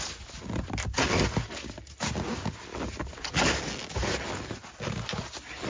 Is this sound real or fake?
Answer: real